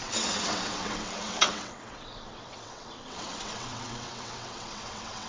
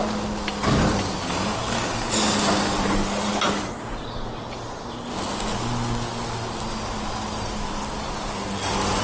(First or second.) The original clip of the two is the second